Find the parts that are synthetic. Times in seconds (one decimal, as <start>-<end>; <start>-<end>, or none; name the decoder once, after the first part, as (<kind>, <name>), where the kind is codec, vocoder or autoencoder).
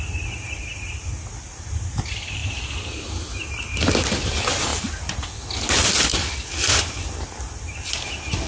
none